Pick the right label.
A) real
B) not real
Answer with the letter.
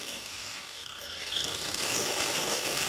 B